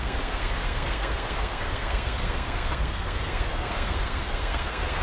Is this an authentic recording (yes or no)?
no